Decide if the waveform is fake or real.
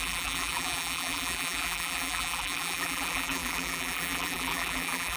fake